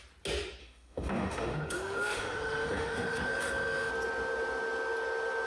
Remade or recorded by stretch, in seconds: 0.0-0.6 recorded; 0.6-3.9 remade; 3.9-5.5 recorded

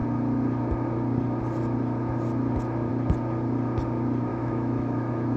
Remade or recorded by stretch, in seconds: 0.0-4.3 recorded; 4.3-5.4 remade

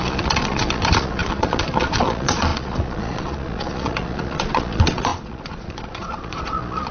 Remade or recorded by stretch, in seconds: 0.0-6.9 remade